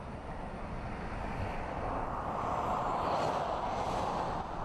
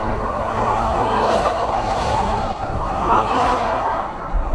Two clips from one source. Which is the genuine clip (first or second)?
first